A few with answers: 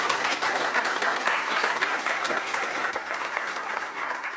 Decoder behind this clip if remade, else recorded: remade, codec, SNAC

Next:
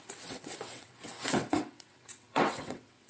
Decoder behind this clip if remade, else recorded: remade, vocoder, WaveNeXt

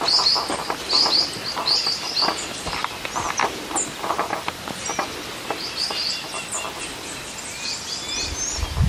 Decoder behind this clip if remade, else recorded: recorded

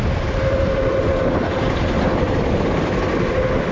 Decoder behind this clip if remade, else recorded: recorded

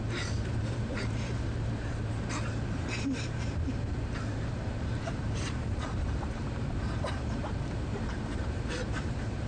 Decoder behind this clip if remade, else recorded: remade, vocoder, BigVGAN v2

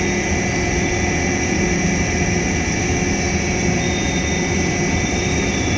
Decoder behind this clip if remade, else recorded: recorded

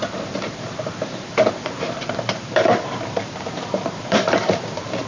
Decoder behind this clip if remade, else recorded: remade, vocoder, BigVGAN v2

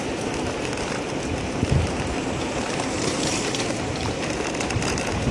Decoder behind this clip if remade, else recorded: remade, vocoder, BigVGAN v2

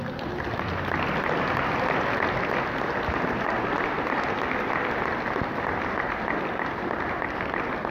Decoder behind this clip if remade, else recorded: recorded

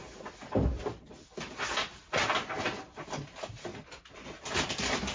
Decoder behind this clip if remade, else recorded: recorded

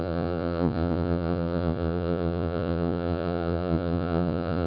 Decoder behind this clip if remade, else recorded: remade, vocoder, Vocos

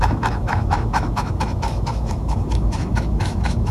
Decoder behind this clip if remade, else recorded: remade, autoencoder, DAC-VAE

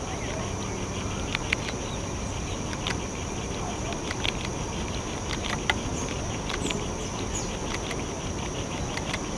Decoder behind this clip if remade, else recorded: recorded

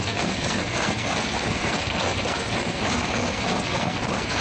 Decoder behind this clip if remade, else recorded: remade, codec, SNAC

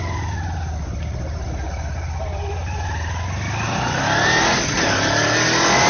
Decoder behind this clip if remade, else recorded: recorded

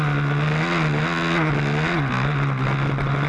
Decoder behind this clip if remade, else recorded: recorded